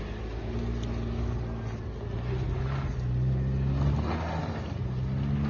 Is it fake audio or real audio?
real